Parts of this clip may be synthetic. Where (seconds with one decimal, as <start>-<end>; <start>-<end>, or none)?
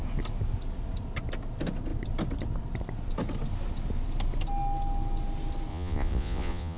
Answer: 5.7-6.8